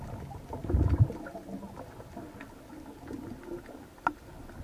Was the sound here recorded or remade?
recorded